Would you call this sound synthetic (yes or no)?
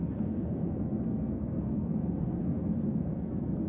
yes